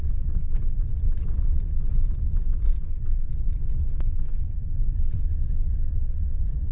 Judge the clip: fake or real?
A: fake